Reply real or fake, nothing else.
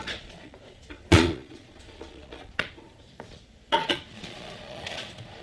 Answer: fake